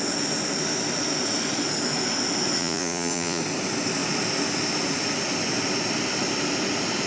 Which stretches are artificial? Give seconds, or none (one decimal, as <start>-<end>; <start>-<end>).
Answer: 2.6-3.4